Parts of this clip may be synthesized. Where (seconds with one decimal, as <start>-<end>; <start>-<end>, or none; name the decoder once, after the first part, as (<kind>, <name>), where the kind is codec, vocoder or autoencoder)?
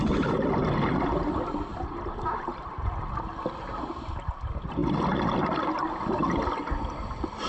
none